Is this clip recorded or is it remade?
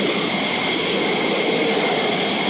remade